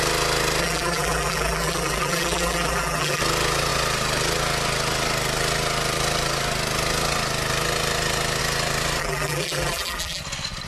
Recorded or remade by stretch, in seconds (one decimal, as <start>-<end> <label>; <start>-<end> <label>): 0.0-0.6 recorded; 0.6-3.2 remade; 3.2-9.0 recorded; 9.0-10.2 remade; 10.2-10.7 recorded